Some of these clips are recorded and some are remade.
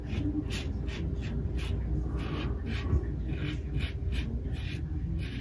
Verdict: recorded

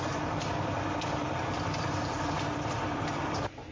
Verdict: remade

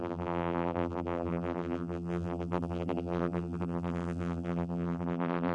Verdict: remade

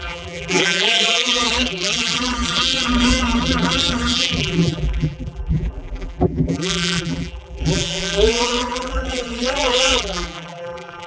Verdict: remade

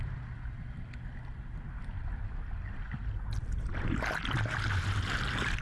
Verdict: recorded